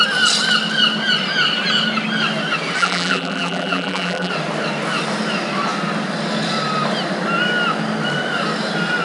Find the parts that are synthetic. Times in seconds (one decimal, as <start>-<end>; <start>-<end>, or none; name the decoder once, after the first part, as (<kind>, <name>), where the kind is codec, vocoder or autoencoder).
2.8-4.3 (vocoder, BigVGAN v2)